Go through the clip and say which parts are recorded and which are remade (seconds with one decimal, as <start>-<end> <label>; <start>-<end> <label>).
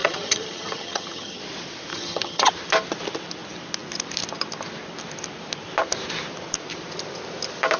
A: 0.0-1.4 remade; 1.4-1.9 recorded; 1.9-2.5 remade; 2.5-7.8 recorded